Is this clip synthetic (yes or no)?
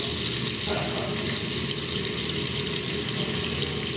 no